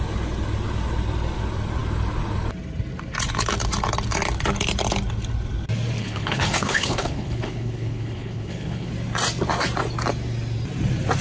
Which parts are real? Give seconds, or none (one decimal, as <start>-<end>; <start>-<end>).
0.0-6.0; 8.9-11.2